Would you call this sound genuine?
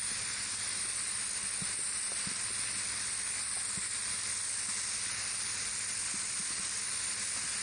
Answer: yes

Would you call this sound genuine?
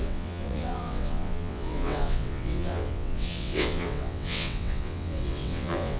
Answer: no